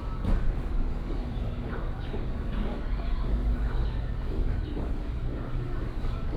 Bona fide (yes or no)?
no